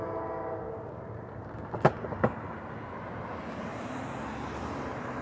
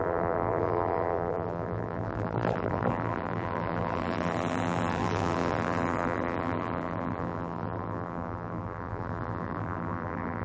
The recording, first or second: first